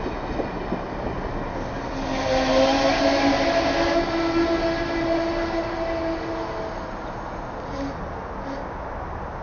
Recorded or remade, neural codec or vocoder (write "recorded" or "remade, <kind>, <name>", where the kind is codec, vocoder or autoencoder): recorded